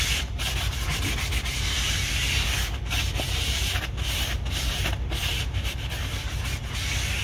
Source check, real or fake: real